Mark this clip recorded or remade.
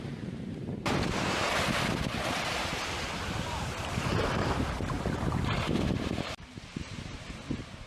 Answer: remade